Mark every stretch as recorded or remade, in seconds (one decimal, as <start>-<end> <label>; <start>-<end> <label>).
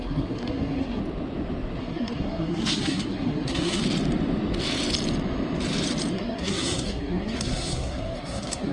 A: 0.0-1.0 remade; 1.0-1.8 recorded; 1.8-3.8 remade; 3.8-6.1 recorded; 6.1-8.7 remade